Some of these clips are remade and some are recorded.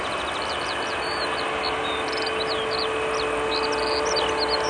recorded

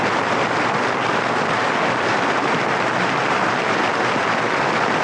recorded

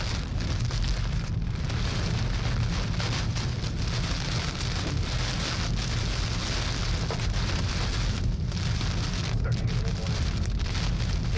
recorded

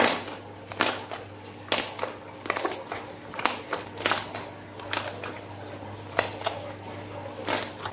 recorded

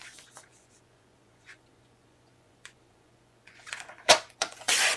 remade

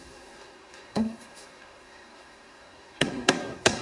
remade